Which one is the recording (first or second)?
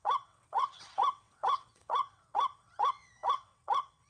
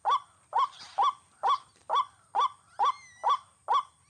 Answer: second